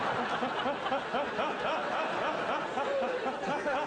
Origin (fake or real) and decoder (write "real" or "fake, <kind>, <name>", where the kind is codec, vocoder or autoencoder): real